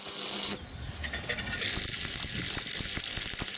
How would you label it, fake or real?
real